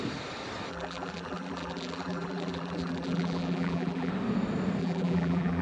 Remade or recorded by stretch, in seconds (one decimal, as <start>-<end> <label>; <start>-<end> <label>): 0.0-0.7 recorded; 0.7-4.1 remade; 4.1-4.8 recorded; 4.8-5.6 remade